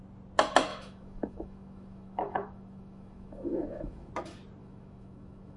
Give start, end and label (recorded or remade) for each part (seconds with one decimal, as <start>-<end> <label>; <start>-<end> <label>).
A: 0.0-0.7 recorded; 0.7-4.1 remade; 4.1-4.6 recorded; 4.6-5.6 remade